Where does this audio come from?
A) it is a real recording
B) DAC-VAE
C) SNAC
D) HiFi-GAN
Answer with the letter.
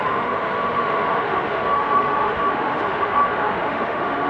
B